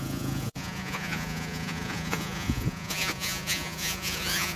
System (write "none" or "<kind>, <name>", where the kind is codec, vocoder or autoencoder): vocoder, Vocos